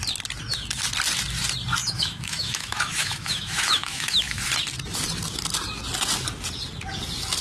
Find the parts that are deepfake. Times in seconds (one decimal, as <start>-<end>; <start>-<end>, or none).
1.8-4.4